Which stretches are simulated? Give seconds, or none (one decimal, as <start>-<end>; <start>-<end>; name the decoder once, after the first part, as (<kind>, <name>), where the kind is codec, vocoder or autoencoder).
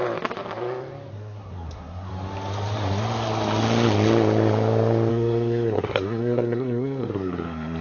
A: 1.1-2.1 (codec, SNAC); 5.1-7.8